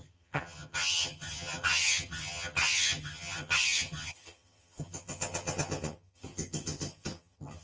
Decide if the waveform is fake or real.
fake